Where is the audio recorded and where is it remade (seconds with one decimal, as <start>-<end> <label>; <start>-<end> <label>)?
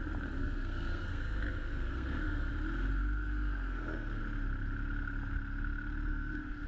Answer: 0.0-0.4 recorded; 0.4-2.5 remade; 2.5-2.9 recorded; 2.9-4.2 remade; 4.2-6.1 recorded; 6.1-6.7 remade